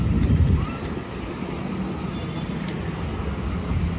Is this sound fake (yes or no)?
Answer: no